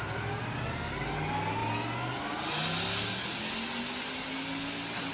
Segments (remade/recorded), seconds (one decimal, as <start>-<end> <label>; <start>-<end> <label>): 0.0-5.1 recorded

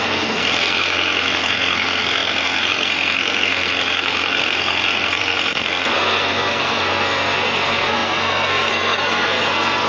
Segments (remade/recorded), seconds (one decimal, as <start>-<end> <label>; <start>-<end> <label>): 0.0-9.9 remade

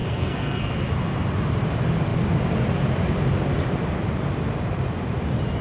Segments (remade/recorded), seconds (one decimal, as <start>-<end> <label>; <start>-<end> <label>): 0.0-0.9 remade; 0.9-5.6 recorded

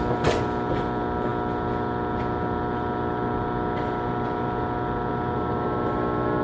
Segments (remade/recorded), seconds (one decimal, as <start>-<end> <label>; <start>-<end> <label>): 0.0-6.4 recorded

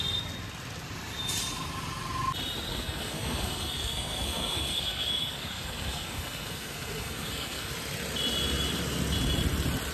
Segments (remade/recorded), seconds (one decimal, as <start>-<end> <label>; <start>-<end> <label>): 0.0-2.7 recorded; 2.7-7.7 remade; 7.7-9.9 recorded

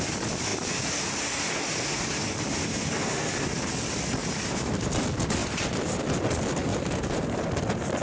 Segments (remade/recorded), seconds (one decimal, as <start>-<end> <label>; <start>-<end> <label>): 0.0-4.2 recorded; 4.2-4.9 remade; 4.9-5.4 recorded; 5.4-6.0 remade; 6.0-6.7 recorded; 6.7-7.5 remade; 7.5-8.0 recorded